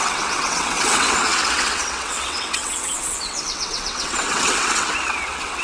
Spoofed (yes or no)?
yes